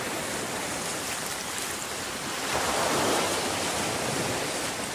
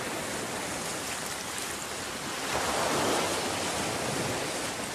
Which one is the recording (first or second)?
second